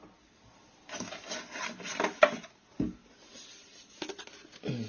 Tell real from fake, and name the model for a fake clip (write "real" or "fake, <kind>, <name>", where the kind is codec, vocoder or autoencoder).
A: real